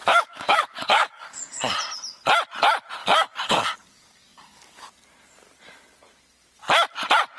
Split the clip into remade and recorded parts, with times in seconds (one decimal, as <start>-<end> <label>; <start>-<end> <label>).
0.0-1.7 remade; 1.7-3.0 recorded; 3.0-4.9 remade; 4.9-7.4 recorded